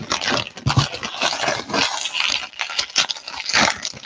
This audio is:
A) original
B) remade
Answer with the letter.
A